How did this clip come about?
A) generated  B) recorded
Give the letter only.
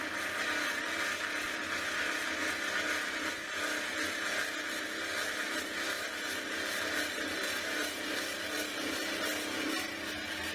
B